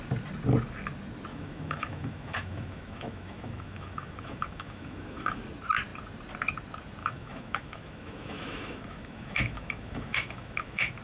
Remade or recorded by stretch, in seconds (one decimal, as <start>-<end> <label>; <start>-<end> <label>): 0.0-1.3 recorded; 1.3-5.4 remade; 5.4-7.0 recorded; 7.0-11.0 remade